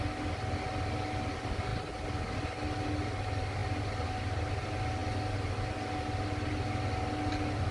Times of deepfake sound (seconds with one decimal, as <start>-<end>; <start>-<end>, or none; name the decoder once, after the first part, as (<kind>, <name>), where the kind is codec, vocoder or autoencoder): none